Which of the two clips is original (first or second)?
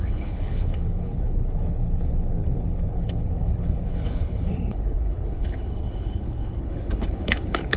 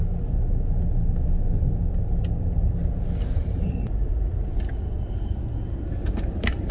second